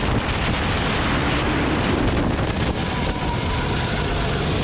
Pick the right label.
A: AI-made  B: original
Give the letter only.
B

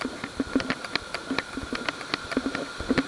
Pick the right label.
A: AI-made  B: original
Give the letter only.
B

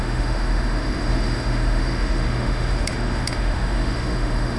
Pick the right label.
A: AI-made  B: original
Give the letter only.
A